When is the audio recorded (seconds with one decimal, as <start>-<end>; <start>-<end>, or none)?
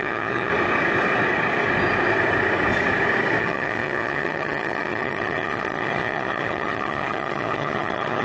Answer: 0.5-3.4